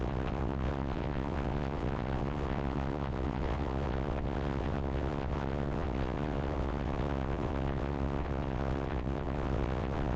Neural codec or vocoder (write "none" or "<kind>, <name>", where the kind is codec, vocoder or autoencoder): vocoder, WaveNeXt